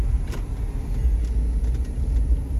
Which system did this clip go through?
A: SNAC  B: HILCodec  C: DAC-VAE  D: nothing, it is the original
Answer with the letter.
D